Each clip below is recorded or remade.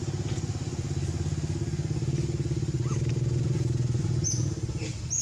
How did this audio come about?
recorded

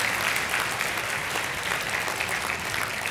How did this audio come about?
recorded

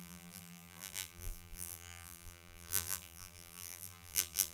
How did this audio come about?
remade